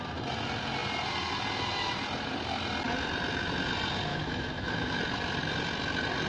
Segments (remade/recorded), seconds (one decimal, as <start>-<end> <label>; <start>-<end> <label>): 0.0-4.1 recorded; 4.1-5.0 remade; 5.0-6.3 recorded